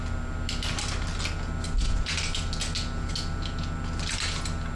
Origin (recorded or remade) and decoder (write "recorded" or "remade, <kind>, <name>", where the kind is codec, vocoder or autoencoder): recorded